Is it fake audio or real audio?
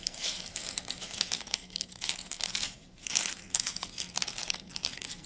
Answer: fake